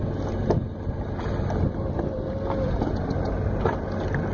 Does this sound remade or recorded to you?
recorded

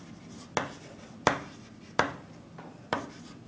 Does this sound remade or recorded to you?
recorded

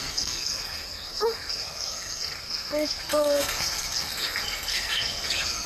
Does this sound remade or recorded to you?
remade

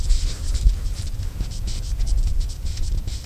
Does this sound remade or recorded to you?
remade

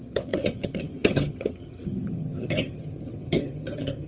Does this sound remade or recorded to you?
remade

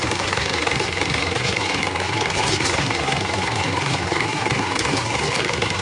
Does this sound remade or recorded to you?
remade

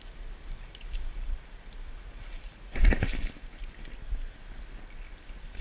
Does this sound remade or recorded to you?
recorded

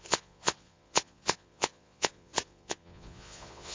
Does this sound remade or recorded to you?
remade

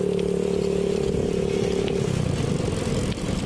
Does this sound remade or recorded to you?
recorded